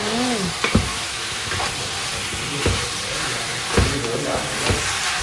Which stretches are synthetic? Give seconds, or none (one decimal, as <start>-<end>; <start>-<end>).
0.9-1.5